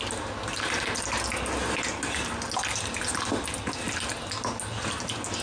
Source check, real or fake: real